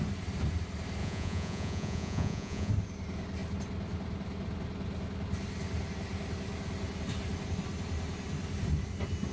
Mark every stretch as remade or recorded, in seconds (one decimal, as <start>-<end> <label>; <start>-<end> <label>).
0.0-1.0 recorded; 1.0-2.7 remade; 2.7-9.3 recorded